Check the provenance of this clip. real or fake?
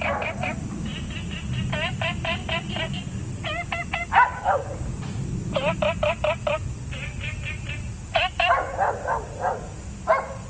real